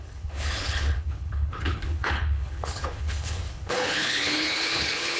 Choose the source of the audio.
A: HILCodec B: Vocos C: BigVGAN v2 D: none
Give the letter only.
A